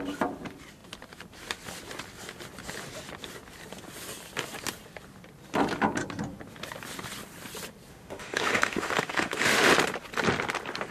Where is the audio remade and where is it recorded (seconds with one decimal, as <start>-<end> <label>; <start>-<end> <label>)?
0.0-7.9 recorded; 7.9-9.7 remade; 9.7-10.9 recorded